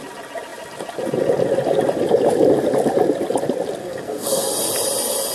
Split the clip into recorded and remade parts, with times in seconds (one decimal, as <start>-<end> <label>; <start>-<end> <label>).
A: 0.0-3.8 recorded; 3.8-4.5 remade; 4.5-5.3 recorded